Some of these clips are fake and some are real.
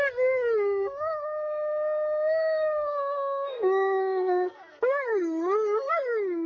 fake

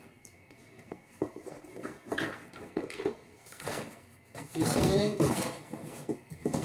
fake